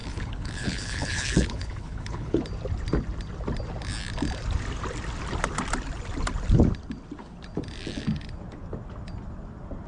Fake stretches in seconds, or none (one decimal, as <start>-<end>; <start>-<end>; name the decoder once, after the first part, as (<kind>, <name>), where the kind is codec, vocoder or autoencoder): 0.0-2.4 (codec, HILCodec)

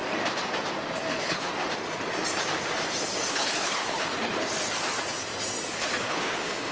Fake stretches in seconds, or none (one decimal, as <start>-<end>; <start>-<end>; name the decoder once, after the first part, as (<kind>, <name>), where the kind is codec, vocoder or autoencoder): 1.1-1.5 (codec, HILCodec); 3.3-4.1; 5.7-6.7

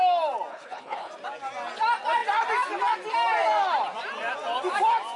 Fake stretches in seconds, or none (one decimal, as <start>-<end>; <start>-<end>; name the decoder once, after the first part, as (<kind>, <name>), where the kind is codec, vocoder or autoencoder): 0.5-1.1 (codec, HILCodec)

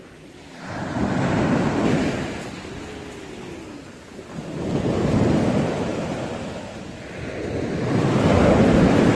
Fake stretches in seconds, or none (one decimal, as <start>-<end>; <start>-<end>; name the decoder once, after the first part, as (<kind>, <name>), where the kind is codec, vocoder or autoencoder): none

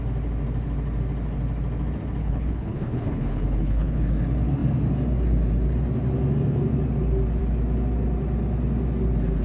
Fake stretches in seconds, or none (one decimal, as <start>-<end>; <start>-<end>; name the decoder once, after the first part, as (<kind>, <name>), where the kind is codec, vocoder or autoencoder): 2.2-4.1 (codec, HILCodec)

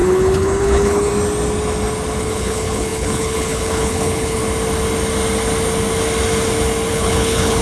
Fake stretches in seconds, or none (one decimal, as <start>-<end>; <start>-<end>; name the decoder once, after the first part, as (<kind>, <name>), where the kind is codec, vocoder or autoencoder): 0.0-1.1 (codec, HILCodec); 2.2-4.4; 6.9-7.6